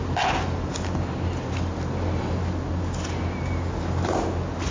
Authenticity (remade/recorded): recorded